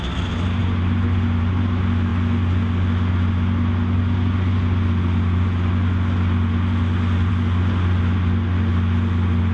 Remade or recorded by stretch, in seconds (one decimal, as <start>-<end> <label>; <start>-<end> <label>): 0.0-9.5 recorded